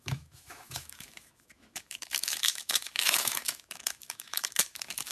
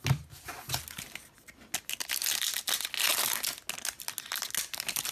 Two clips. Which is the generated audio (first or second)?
first